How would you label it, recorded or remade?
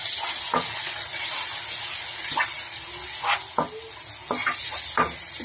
recorded